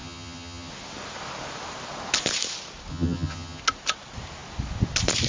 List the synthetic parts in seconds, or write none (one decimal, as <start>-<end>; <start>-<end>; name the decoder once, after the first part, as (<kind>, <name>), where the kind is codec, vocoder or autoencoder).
0.0-0.7 (vocoder, HiFi-GAN); 2.9-3.6